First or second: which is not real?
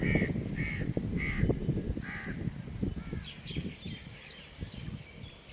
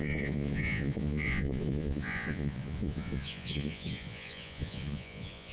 second